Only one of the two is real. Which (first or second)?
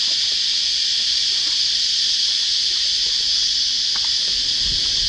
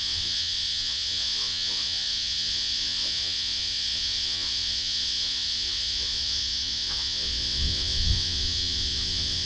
first